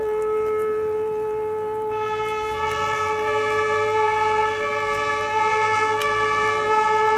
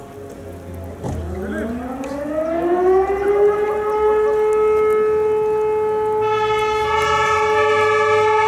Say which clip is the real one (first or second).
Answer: second